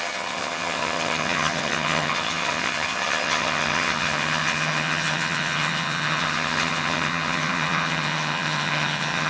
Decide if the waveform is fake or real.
fake